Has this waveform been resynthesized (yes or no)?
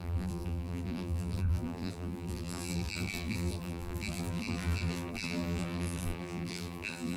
yes